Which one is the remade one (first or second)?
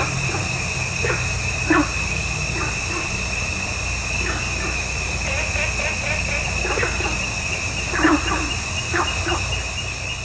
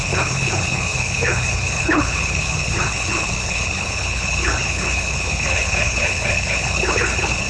second